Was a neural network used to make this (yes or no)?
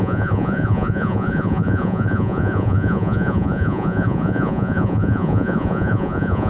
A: yes